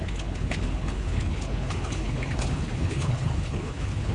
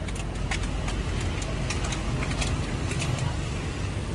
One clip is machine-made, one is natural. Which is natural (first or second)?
second